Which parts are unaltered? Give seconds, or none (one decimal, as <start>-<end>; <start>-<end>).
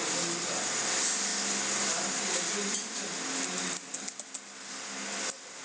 0.0-5.6